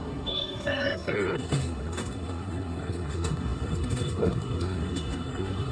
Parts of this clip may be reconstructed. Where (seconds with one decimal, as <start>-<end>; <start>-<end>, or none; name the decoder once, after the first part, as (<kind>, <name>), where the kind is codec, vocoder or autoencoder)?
0.0-5.7 (codec, SNAC)